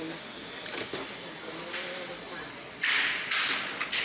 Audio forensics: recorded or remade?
recorded